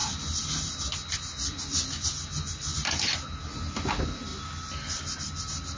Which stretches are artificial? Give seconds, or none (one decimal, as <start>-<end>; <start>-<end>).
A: none